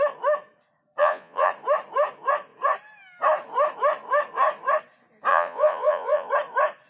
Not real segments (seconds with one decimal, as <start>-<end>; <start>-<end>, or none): 1.0-1.5; 5.3-6.3